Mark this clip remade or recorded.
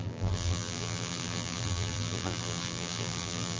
remade